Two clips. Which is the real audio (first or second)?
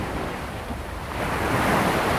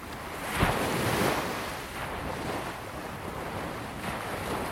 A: second